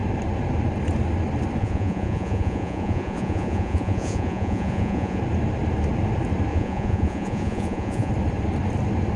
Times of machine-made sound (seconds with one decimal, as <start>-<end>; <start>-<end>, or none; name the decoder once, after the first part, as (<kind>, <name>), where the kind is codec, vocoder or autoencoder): 1.6-5.2 (vocoder, Vocos); 6.5-8.1